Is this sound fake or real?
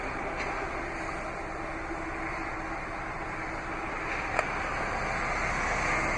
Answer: real